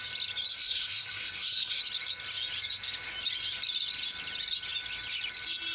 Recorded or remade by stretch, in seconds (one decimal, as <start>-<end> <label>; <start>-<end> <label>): 0.0-0.5 recorded; 0.5-1.8 remade; 1.8-5.7 recorded

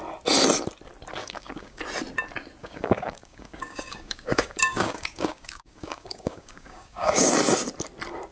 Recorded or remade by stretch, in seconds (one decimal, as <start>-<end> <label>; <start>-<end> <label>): 0.0-1.2 recorded; 1.2-1.8 remade; 1.8-2.6 recorded; 2.6-7.3 remade; 7.3-8.3 recorded

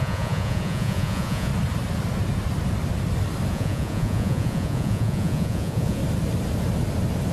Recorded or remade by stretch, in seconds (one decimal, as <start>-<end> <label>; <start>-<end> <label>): 0.0-1.5 remade; 1.5-3.5 recorded; 3.5-6.0 remade; 6.0-7.3 recorded

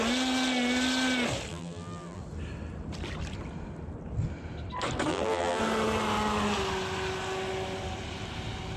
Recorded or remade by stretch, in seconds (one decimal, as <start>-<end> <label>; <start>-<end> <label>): 0.0-1.5 recorded; 1.5-2.2 remade; 2.2-5.1 recorded; 5.1-5.6 remade; 5.6-8.8 recorded

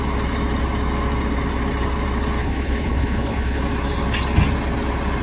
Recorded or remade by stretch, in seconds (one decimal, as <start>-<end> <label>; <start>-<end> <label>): 0.0-2.4 recorded; 2.4-3.6 remade; 3.6-5.2 recorded

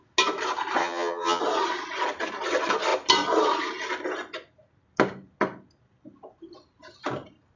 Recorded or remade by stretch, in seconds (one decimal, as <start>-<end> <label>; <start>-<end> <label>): 0.0-0.8 recorded; 0.8-1.4 remade; 1.4-7.6 recorded